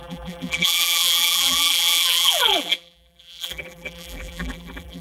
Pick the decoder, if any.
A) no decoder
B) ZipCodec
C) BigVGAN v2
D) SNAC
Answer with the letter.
C